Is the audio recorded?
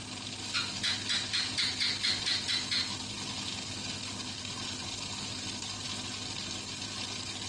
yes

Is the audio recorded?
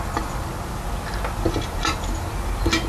yes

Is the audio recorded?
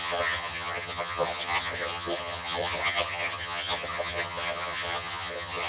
no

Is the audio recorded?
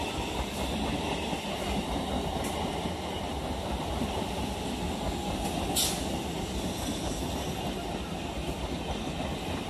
yes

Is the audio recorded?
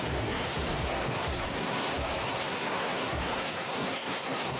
no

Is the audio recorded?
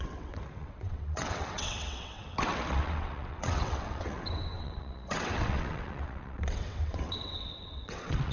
no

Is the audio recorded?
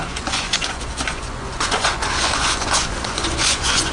no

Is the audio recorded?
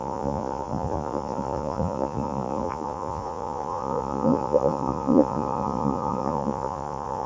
no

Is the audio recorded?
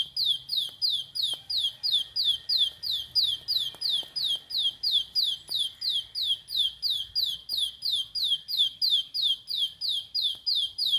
yes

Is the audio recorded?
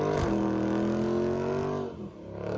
yes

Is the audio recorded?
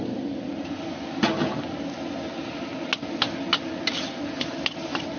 yes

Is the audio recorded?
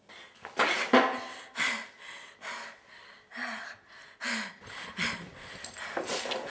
yes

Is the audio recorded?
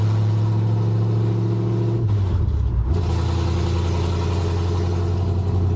yes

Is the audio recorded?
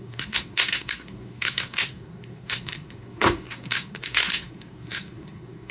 no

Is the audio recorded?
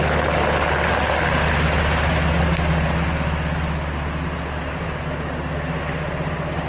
yes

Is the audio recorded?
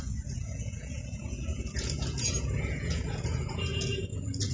no